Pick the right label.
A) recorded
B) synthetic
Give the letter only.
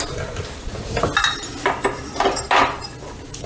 A